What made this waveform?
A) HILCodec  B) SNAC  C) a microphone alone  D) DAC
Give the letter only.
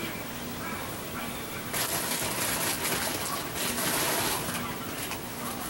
C